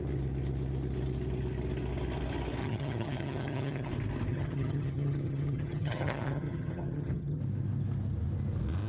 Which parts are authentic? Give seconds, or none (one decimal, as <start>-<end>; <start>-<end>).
0.0-2.6; 3.9-4.3; 7.4-8.9